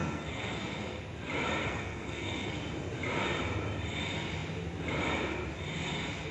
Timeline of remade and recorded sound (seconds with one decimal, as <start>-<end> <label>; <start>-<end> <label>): 0.0-1.0 remade; 1.0-1.6 recorded; 1.6-2.6 remade; 2.6-6.3 recorded